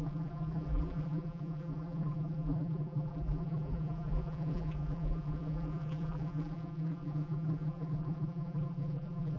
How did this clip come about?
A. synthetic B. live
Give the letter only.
A